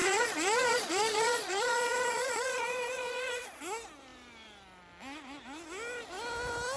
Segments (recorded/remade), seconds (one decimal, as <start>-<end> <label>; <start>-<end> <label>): 0.0-3.6 remade; 3.6-6.8 recorded